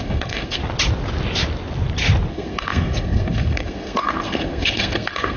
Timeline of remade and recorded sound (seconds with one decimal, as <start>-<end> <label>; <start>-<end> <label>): 0.0-0.6 remade; 0.6-2.3 recorded; 2.3-5.4 remade